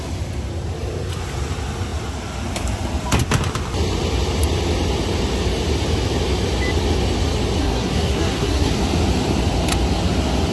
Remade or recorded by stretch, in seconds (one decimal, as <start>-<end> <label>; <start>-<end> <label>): 0.0-7.6 recorded; 7.6-8.7 remade; 8.7-10.5 recorded